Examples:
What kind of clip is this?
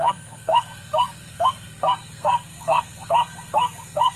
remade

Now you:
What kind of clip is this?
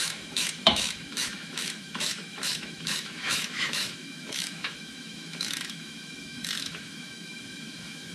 remade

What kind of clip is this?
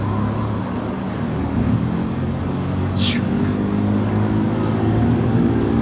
remade